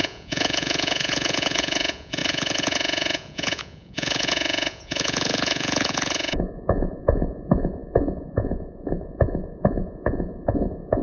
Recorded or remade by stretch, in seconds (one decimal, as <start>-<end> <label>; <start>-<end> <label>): 0.0-11.0 remade

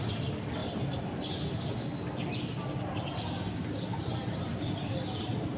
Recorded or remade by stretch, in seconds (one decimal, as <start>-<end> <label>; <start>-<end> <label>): 0.0-5.6 recorded